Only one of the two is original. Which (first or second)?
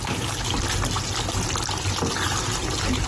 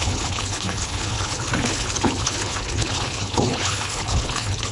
first